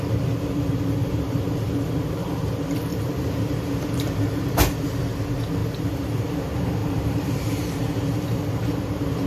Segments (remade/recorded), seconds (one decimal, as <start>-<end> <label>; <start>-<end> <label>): 0.0-1.0 recorded; 1.0-1.9 remade; 1.9-2.9 recorded; 2.9-4.4 remade; 4.4-5.6 recorded; 5.6-6.2 remade; 6.2-6.8 recorded; 6.8-7.8 remade; 7.8-9.3 recorded